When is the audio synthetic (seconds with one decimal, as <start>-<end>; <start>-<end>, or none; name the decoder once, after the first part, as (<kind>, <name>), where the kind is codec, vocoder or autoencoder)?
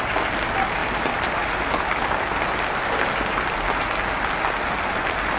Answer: none